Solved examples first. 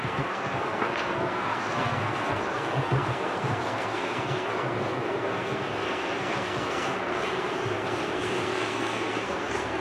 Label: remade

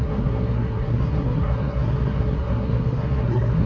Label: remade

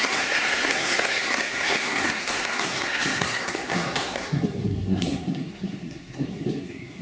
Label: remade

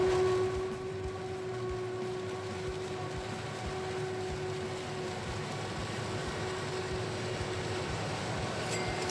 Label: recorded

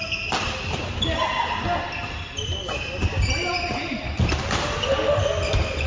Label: recorded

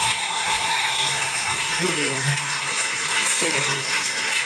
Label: remade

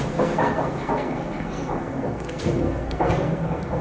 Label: remade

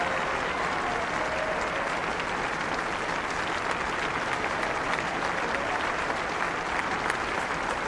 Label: recorded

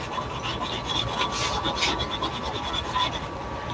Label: recorded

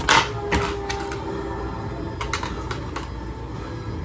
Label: recorded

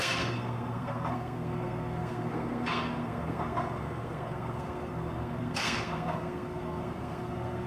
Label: remade